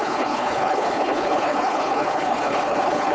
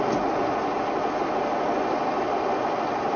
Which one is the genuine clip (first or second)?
second